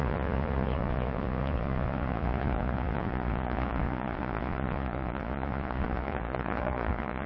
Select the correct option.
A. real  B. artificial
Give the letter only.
B